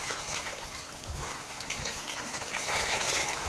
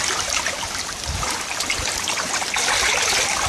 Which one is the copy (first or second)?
first